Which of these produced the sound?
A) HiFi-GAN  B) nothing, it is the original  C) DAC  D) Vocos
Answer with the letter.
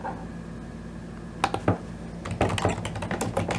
B